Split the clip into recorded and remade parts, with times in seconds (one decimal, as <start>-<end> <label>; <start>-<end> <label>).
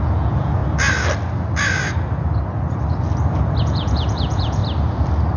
0.0-0.6 remade; 0.6-3.6 recorded; 3.6-4.6 remade; 4.6-5.4 recorded